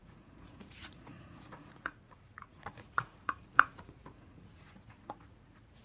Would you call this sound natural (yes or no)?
no